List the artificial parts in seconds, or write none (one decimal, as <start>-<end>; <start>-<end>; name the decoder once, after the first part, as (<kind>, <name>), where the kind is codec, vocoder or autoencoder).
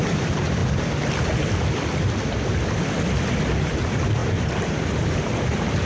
4.2-5.9 (vocoder, BigVGAN v2)